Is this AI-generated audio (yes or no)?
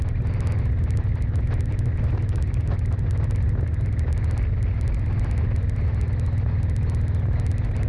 no